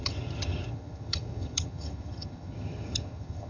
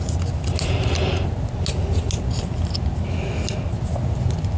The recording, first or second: second